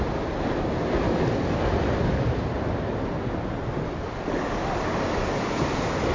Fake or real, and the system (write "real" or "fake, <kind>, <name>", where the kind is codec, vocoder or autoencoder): real